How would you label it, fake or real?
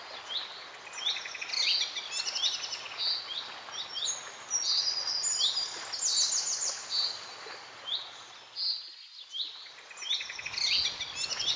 real